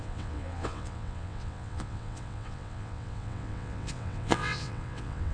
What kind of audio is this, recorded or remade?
remade